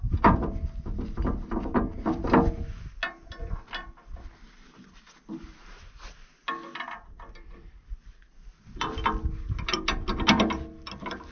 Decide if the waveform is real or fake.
real